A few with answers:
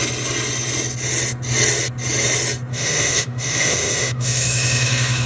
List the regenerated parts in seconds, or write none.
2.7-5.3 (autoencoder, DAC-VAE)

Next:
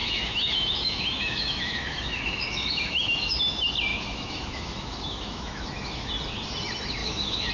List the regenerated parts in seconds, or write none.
0.0-3.4 (autoencoder, DAC-VAE); 3.9-6.1; 7.0-7.5

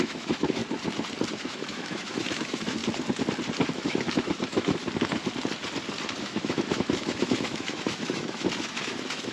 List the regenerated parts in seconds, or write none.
0.0-0.6 (autoencoder, DAC-VAE); 1.3-2.8; 3.7-4.8; 6.2-9.3